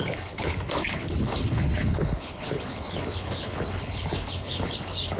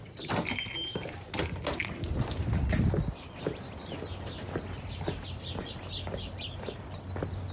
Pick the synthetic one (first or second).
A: first